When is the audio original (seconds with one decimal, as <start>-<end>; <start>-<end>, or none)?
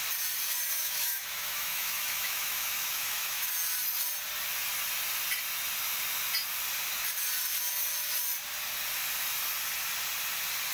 0.0-0.8; 3.5-10.7